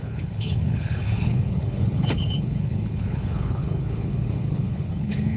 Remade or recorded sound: remade